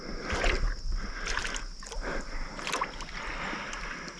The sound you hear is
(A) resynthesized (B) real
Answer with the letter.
B